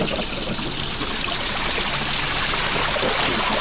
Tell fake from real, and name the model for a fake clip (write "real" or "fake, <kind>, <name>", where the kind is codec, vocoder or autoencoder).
real